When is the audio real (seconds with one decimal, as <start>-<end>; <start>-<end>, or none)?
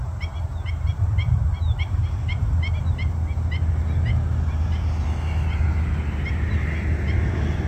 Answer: 0.0-7.7